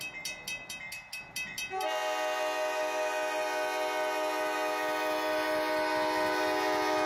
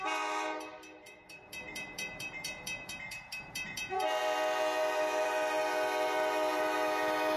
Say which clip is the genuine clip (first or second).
first